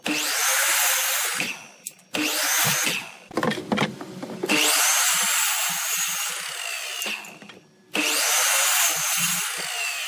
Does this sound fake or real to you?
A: real